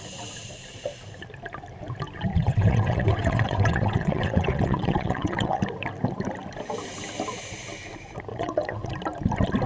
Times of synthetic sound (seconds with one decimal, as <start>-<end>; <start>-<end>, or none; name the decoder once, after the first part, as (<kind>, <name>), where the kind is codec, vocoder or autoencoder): 2.3-5.6 (vocoder, WaveNeXt); 8.3-8.9